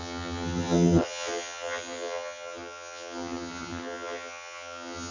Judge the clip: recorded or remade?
remade